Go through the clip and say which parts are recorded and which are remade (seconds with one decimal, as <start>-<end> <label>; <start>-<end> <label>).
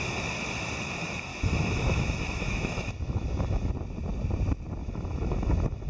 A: 0.0-1.3 recorded; 1.3-3.7 remade; 3.7-4.8 recorded; 4.8-5.9 remade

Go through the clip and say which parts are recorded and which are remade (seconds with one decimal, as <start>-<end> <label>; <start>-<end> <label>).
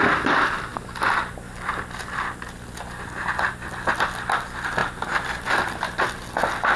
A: 0.0-6.8 recorded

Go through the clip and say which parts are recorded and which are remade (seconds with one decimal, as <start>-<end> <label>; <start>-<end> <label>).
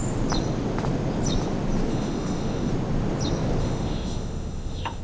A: 0.0-1.9 recorded; 1.9-2.7 remade; 2.7-3.6 recorded; 3.6-5.0 remade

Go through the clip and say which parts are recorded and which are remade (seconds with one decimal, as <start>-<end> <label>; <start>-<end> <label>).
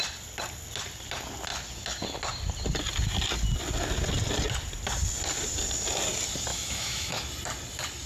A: 0.0-6.5 recorded; 6.5-7.3 remade; 7.3-8.1 recorded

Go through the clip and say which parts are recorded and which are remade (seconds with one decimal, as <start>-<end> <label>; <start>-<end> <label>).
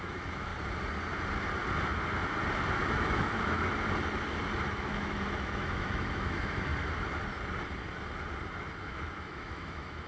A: 0.0-0.5 remade; 0.5-2.7 recorded; 2.7-3.7 remade; 3.7-4.7 recorded; 4.7-6.7 remade; 6.7-8.8 recorded; 8.8-10.1 remade